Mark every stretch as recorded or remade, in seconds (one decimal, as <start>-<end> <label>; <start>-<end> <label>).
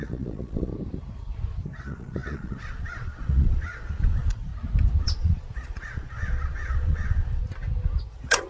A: 0.0-0.7 remade; 0.7-1.8 recorded; 1.8-4.5 remade; 4.5-5.0 recorded; 5.0-7.4 remade; 7.4-8.1 recorded; 8.1-8.5 remade